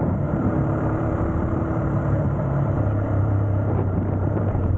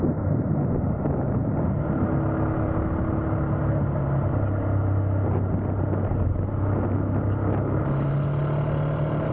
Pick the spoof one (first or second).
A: first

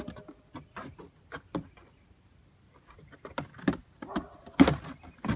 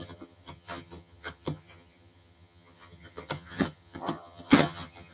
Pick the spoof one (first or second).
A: second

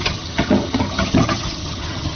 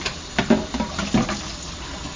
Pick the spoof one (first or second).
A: first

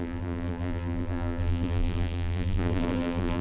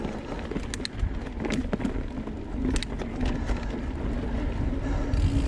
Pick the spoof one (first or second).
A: first